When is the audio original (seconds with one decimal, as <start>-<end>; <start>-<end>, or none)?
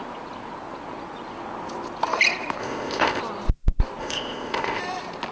0.0-2.6; 3.2-4.0; 4.8-5.3